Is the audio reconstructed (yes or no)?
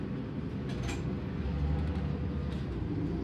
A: no